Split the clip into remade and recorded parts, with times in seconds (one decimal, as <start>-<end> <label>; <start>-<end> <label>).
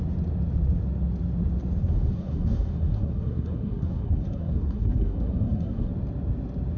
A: 0.0-1.8 recorded; 1.8-5.9 remade; 5.9-6.8 recorded